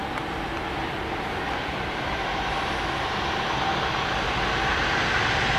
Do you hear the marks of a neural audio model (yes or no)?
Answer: no